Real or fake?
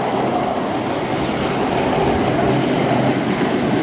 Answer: real